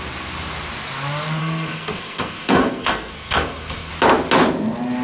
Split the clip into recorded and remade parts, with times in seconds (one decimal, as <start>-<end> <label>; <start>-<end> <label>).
0.0-1.4 recorded; 1.4-3.9 remade; 3.9-5.0 recorded